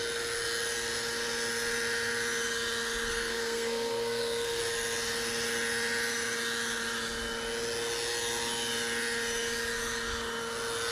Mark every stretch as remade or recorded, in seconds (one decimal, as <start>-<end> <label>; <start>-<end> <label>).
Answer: 0.0-3.1 recorded; 3.1-4.6 remade; 4.6-10.9 recorded